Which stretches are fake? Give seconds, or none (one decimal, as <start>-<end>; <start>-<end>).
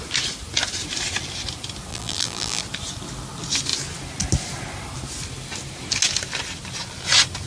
1.9-2.6